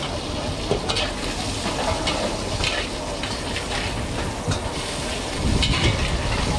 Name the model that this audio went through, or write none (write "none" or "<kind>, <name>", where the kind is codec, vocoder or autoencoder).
none